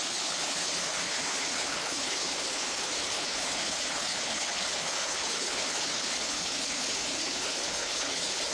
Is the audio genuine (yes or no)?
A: no